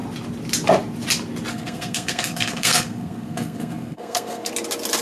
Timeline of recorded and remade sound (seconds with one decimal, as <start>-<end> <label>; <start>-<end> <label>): 0.0-1.5 recorded; 1.5-4.5 remade; 4.5-5.0 recorded